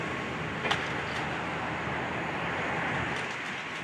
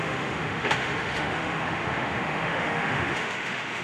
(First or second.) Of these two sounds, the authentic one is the first